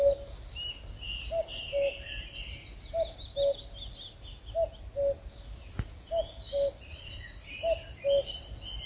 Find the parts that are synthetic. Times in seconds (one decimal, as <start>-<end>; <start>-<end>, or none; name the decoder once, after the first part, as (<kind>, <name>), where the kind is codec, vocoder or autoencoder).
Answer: 6.9-7.5 (vocoder, Vocos)